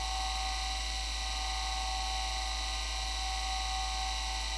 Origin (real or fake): real